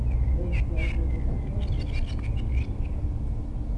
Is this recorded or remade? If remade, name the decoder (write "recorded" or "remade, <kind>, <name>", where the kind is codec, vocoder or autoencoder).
recorded